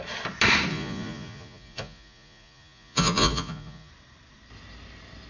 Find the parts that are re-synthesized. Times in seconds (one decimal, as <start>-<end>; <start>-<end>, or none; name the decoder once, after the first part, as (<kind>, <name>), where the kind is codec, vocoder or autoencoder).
0.7-3.9 (vocoder, Vocos)